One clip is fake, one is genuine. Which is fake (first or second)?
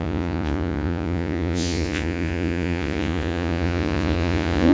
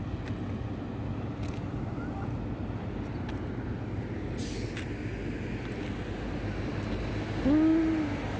first